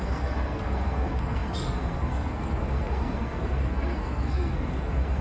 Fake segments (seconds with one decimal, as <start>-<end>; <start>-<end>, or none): 0.0-5.2